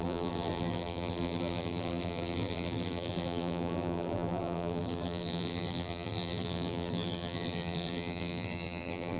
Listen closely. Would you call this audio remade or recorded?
remade